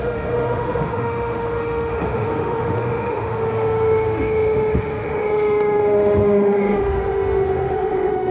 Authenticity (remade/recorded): remade